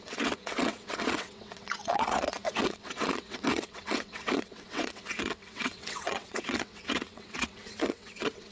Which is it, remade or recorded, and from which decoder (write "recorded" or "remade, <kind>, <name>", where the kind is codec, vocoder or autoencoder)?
remade, vocoder, WaveNeXt